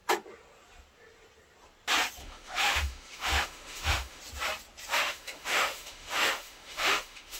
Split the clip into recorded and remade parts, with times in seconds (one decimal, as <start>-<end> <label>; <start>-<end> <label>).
0.0-2.2 recorded; 2.2-4.2 remade; 4.2-4.9 recorded; 4.9-7.4 remade